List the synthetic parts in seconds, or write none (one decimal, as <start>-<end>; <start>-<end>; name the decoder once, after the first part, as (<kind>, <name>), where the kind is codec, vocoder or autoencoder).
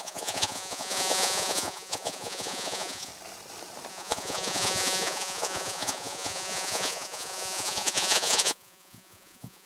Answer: 0.0-3.1 (vocoder, Vocos); 3.9-9.7